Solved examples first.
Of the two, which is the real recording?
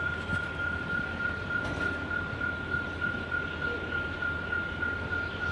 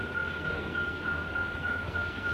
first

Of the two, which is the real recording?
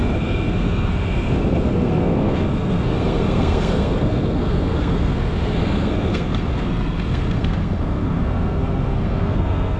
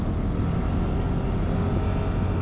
second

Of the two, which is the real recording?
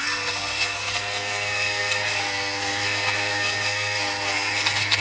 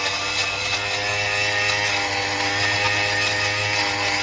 second